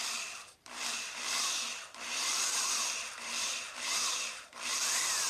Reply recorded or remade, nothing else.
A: remade